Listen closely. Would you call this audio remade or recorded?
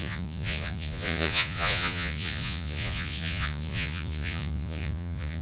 remade